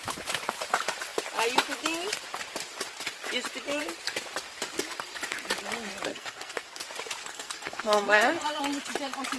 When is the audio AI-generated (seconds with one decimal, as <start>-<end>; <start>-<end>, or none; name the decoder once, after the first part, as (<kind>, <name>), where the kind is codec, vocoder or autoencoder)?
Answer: 6.1-6.8 (codec, SNAC); 7.2-8.6